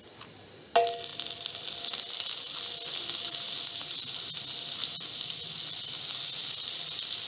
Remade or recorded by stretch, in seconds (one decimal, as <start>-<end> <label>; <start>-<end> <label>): 0.0-1.1 recorded; 1.1-2.0 remade; 2.0-6.4 recorded; 6.4-7.3 remade